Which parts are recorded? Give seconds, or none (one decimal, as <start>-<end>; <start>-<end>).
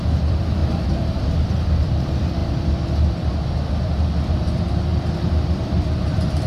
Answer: 2.4-3.3